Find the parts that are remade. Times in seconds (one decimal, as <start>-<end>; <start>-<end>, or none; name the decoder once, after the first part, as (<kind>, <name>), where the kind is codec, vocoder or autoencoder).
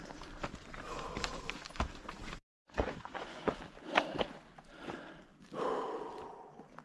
2.2-3.5 (vocoder, Vocos)